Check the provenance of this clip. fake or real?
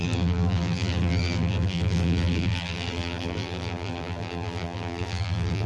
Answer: fake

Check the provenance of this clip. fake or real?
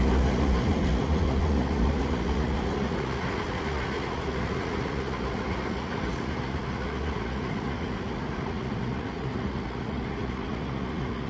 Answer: fake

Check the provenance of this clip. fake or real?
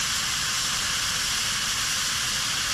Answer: real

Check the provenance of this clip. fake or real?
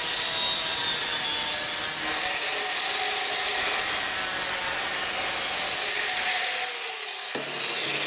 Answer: real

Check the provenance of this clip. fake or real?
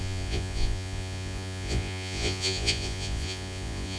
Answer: fake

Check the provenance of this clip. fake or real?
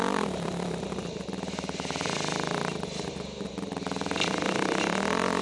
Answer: real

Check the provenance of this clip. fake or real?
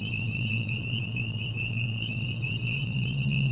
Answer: fake